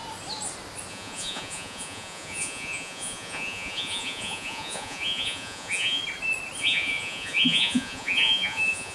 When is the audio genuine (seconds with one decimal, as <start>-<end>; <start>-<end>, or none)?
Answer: 0.0-0.9; 6.0-6.6